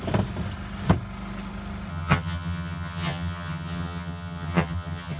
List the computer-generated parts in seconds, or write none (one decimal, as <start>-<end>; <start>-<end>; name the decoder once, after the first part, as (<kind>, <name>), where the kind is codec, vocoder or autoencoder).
1.9-5.2 (vocoder, HiFi-GAN)